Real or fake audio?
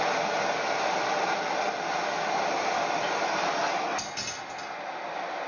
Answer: real